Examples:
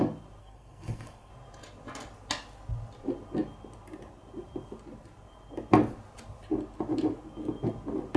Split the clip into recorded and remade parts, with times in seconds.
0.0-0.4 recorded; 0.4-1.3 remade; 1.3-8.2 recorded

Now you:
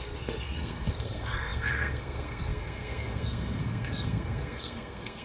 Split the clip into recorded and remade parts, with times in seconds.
0.0-5.2 remade

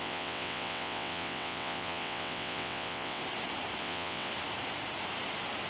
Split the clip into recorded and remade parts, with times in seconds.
0.0-3.2 remade; 3.2-3.8 recorded; 3.8-4.3 remade; 4.3-5.7 recorded

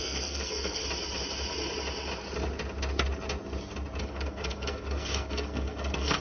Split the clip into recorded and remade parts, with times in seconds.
0.0-0.8 remade; 0.8-4.0 recorded; 4.0-6.2 remade